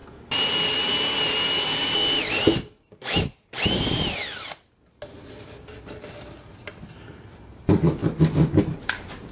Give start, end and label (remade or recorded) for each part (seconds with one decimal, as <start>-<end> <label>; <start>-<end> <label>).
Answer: 0.0-9.3 recorded